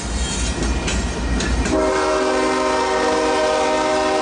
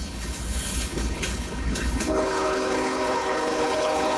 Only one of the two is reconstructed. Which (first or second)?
second